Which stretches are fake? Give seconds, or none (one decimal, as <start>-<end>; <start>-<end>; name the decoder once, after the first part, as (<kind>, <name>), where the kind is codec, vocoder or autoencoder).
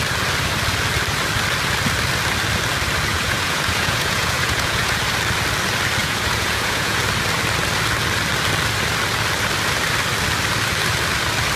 3.1-5.0 (vocoder, Vocos); 6.0-7.0